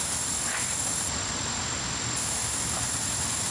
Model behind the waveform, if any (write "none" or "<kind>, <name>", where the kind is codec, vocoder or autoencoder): none